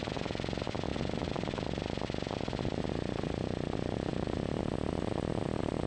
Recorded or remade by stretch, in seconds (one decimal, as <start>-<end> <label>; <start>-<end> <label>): 0.0-5.9 recorded